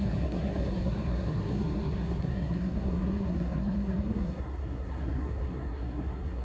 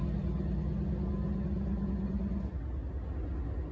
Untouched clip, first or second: second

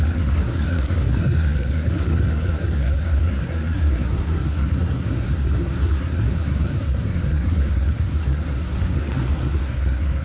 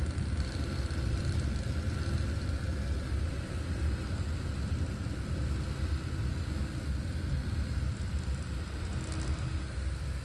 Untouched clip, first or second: second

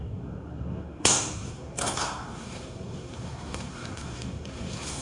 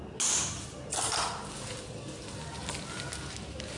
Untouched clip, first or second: second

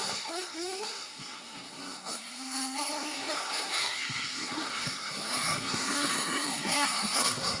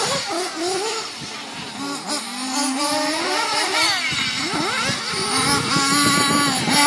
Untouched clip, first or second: second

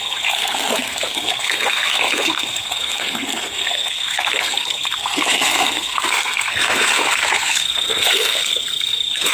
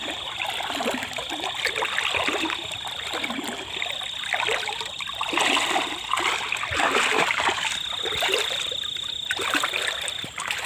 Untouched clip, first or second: second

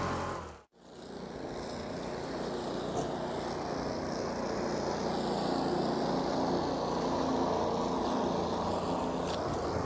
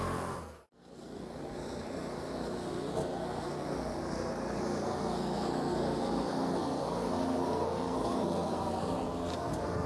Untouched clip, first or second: first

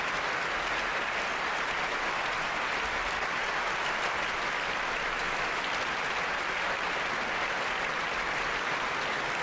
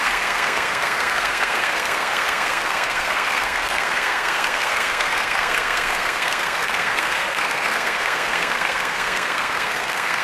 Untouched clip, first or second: first